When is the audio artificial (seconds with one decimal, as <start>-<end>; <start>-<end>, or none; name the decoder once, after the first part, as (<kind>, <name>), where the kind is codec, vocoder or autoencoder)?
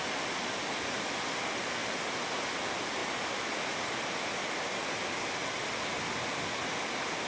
none